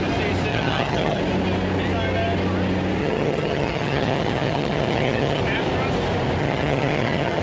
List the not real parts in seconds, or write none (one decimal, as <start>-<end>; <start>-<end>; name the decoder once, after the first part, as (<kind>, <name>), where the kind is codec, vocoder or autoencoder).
0.5-1.2 (vocoder, HiFi-GAN); 3.0-5.4; 6.4-7.4